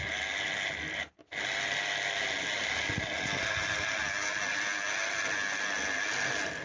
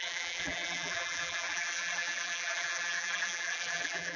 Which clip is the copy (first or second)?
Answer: second